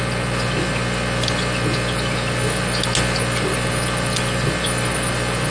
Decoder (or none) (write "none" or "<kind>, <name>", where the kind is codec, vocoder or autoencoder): none